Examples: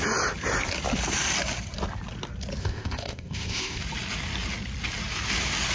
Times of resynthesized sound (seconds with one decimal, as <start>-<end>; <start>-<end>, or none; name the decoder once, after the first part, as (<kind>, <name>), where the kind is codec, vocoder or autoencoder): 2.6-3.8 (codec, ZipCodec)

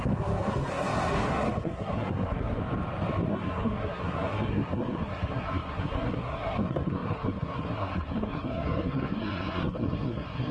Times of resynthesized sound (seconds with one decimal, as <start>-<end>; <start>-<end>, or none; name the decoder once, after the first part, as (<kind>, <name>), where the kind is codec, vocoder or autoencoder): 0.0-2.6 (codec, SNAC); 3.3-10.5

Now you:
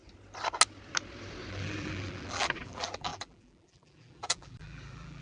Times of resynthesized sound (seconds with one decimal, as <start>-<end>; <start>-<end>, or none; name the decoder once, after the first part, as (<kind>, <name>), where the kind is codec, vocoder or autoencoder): 1.5-5.2 (vocoder, BigVGAN v2)

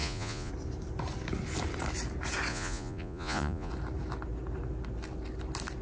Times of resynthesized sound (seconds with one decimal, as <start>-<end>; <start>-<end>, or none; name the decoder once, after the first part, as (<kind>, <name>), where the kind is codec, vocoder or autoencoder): 0.0-0.5 (vocoder, Vocos); 2.5-3.7

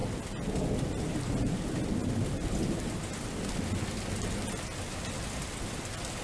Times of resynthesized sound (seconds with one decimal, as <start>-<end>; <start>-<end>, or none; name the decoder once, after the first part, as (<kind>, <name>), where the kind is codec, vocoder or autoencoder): none